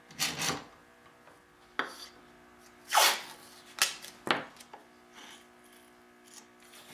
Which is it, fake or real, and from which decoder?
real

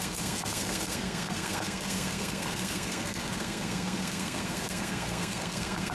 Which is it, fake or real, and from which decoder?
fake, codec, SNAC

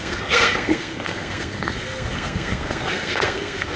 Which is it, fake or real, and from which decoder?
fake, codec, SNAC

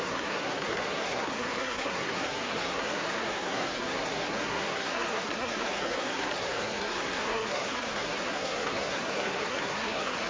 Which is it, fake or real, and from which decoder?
fake, codec, SNAC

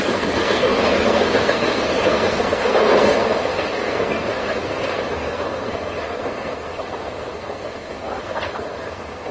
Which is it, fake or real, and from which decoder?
fake, codec, SNAC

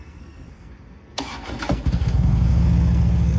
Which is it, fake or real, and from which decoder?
fake, codec, SNAC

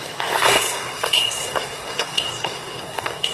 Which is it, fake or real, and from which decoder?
fake, codec, SNAC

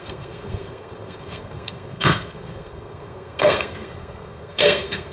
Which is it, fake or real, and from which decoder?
fake, codec, SNAC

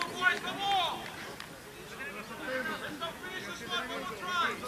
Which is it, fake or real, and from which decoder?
real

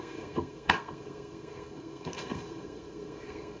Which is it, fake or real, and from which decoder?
fake, codec, SNAC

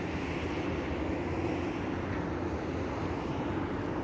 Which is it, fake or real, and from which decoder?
real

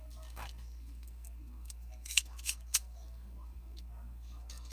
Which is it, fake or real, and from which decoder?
fake, codec, SNAC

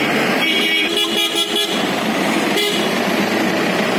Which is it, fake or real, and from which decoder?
real